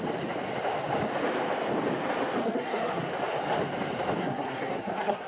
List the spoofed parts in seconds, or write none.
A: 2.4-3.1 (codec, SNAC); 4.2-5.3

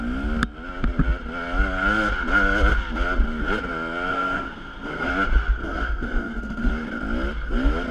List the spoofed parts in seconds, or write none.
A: 4.1-5.1 (codec, SNAC); 5.6-6.7

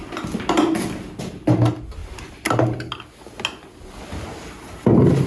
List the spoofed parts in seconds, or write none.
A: none

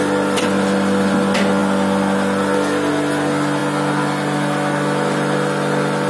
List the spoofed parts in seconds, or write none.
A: none

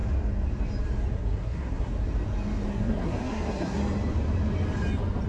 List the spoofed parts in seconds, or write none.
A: 1.1-1.9 (codec, SNAC); 2.7-3.8